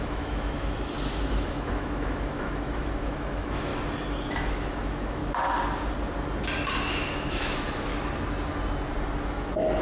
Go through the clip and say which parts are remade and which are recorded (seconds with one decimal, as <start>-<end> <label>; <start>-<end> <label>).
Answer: 0.0-3.7 remade; 3.7-4.3 recorded; 4.3-5.2 remade; 5.2-6.9 recorded; 6.9-7.9 remade; 7.9-9.2 recorded; 9.2-9.8 remade